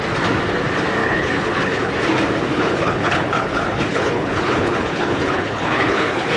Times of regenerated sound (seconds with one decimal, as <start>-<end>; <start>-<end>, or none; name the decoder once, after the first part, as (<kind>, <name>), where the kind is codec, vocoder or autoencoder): 1.0-1.9 (codec, HILCodec); 2.5-6.4